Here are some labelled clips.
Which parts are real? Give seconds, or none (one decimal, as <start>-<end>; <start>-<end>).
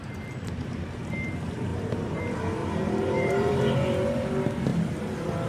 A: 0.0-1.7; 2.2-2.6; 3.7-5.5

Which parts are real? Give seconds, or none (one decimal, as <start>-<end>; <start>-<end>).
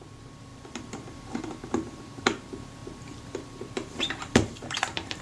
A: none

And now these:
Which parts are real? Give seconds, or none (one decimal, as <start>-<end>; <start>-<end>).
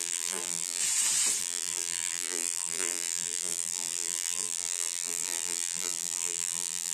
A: 0.8-1.4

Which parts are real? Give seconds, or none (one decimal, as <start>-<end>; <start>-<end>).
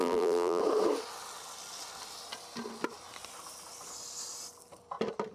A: 0.6-5.3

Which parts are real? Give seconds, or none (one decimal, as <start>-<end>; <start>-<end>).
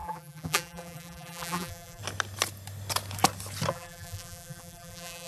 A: 2.0-3.7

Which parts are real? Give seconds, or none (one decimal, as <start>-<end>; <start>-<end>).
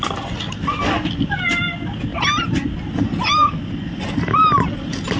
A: 0.0-5.2